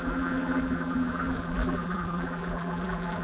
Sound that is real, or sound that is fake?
fake